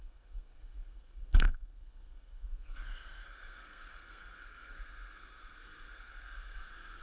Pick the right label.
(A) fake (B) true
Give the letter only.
A